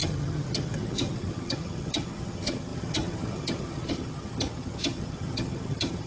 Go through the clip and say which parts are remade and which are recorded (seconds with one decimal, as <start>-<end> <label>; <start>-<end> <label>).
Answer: 0.0-6.1 remade